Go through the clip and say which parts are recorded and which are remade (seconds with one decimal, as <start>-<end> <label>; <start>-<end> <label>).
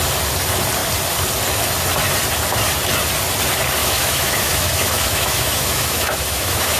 0.0-3.8 recorded; 3.8-6.8 remade